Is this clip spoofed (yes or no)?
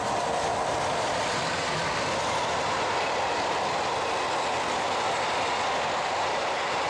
no